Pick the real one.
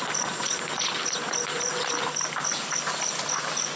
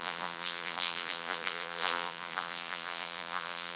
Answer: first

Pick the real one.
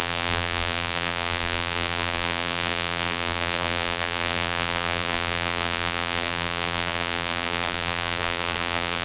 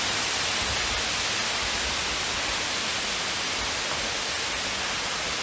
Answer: second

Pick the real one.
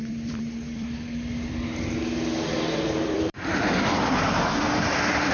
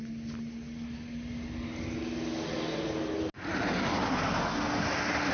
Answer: second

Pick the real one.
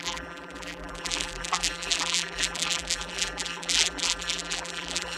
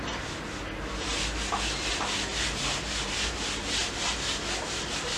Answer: second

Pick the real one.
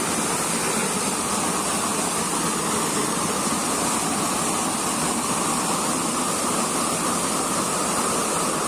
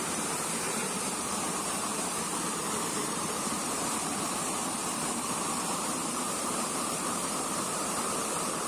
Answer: first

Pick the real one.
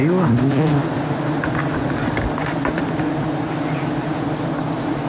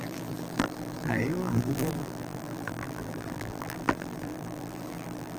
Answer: first